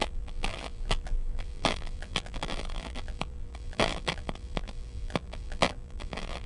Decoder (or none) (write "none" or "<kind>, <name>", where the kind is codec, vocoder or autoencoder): vocoder, BigVGAN v2